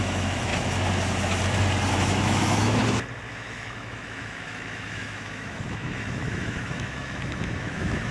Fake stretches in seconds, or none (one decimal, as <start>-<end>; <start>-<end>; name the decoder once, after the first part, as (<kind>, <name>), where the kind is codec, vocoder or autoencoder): 0.0-0.5 (autoencoder, DAC-VAE); 1.9-2.8; 3.3-8.1